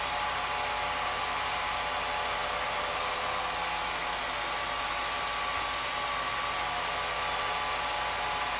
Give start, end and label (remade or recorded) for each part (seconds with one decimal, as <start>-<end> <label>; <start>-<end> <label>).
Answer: 0.0-2.4 recorded; 2.4-3.4 remade; 3.4-8.6 recorded